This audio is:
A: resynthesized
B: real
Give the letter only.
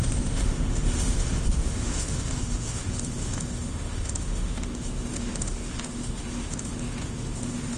A